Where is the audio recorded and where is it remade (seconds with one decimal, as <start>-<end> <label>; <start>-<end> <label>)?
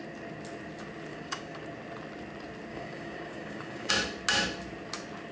0.0-1.1 recorded; 1.1-1.6 remade; 1.6-2.7 recorded; 2.7-3.9 remade; 3.9-5.3 recorded